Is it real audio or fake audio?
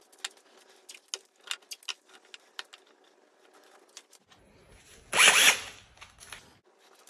real